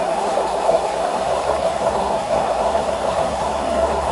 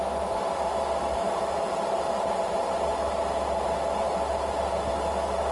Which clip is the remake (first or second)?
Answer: first